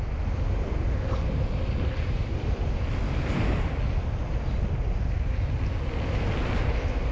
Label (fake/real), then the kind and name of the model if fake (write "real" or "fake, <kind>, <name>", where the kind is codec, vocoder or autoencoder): real